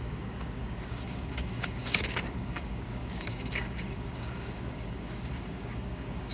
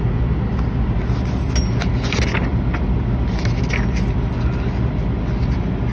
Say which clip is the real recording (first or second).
second